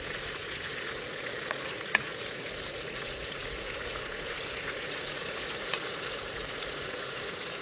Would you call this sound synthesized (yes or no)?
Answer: yes